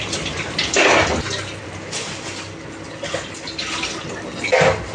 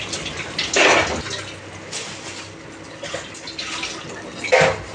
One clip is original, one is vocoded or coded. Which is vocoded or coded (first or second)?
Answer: first